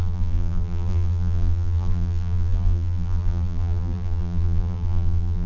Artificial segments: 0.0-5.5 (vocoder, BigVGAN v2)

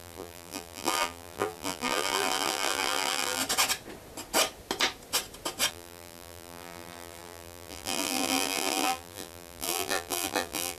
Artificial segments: 0.0-3.4 (vocoder, BigVGAN v2); 5.7-10.8

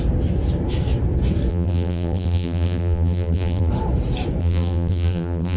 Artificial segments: 1.5-3.7 (vocoder, BigVGAN v2); 4.4-5.6

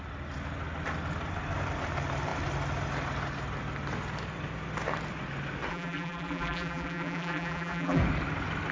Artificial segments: 5.7-8.0 (vocoder, BigVGAN v2)

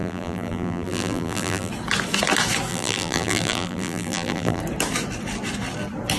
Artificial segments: 0.0-1.7 (vocoder, BigVGAN v2); 2.7-4.6

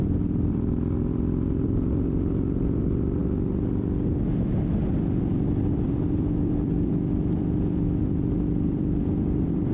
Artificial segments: 0.0-3.2 (vocoder, BigVGAN v2); 5.2-9.7

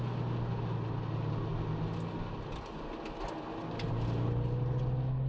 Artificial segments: none

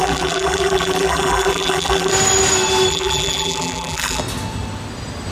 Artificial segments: 0.0-2.1 (vocoder, BigVGAN v2); 2.9-4.2